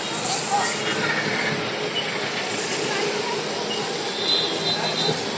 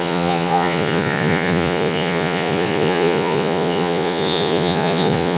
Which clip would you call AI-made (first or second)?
second